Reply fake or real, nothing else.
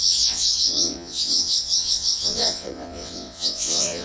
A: fake